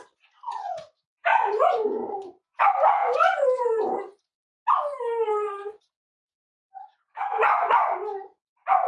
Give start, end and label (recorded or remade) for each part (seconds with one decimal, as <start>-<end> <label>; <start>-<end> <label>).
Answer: 0.0-1.3 recorded; 1.3-2.6 remade; 2.6-7.1 recorded; 7.1-7.7 remade; 7.7-8.9 recorded